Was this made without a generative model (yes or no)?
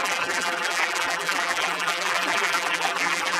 no